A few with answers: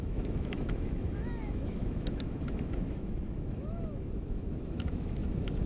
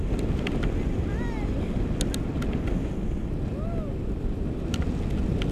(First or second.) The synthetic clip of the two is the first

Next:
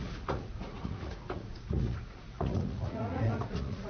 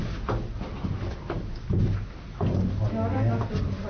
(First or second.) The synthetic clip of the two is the first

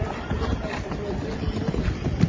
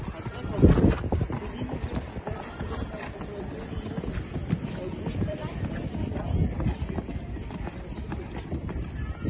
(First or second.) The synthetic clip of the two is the first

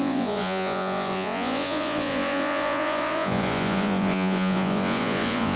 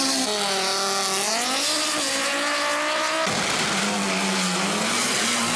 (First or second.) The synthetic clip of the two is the first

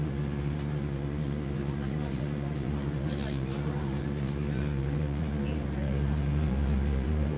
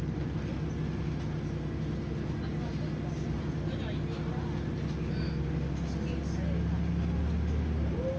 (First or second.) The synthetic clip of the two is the first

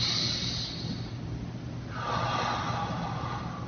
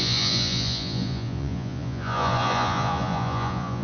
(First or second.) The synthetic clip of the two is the second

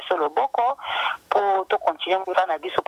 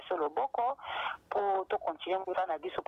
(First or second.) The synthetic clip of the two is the first